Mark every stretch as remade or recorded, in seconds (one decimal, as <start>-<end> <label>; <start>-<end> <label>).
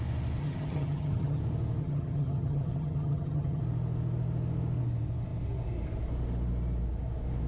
0.0-0.4 recorded; 0.4-1.4 remade; 1.4-1.8 recorded; 1.8-3.6 remade; 3.6-7.5 recorded